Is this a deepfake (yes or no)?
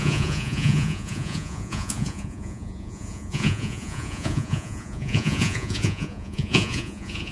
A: yes